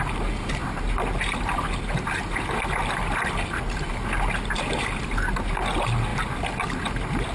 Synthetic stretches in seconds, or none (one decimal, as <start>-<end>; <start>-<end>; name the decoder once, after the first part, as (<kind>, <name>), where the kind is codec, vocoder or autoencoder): none